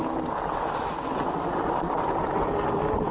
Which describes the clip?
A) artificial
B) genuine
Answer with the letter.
B